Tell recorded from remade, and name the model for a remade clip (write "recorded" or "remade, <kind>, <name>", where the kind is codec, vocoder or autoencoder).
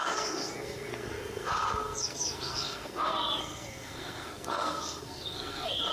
remade, codec, SNAC